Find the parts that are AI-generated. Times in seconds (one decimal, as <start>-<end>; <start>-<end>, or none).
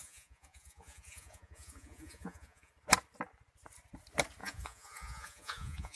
0.0-2.7; 4.4-6.0